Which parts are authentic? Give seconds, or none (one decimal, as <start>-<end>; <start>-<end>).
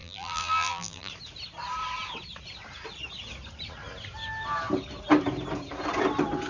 1.1-6.5